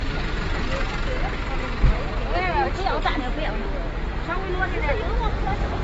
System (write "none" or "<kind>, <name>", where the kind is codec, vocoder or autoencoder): none